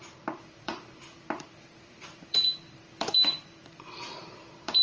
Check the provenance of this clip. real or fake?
fake